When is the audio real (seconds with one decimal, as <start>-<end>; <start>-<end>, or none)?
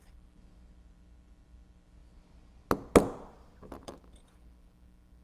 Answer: 0.0-5.2